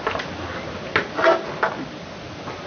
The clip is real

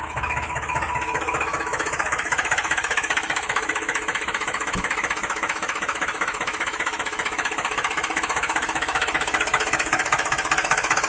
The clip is fake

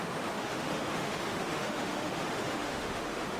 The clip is fake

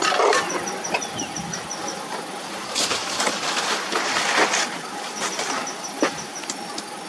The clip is real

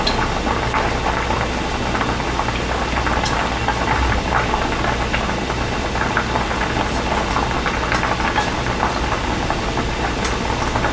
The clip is real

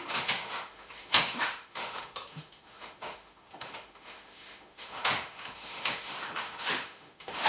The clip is fake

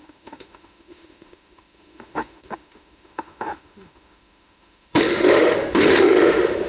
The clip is fake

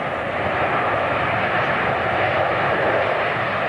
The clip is real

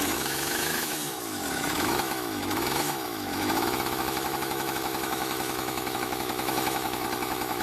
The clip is fake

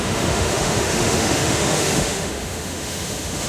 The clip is fake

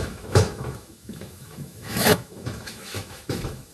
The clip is fake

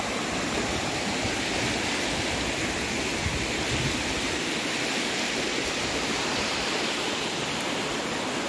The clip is real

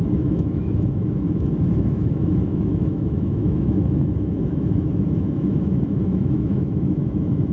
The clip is fake